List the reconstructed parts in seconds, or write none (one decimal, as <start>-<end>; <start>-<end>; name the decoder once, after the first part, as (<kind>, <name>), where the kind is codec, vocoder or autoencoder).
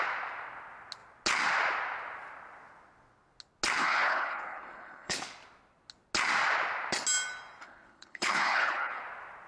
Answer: 3.8-5.2 (codec, HILCodec); 7.6-9.0